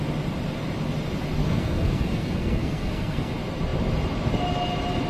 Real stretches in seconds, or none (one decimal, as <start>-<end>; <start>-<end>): 0.0-1.4; 3.3-5.1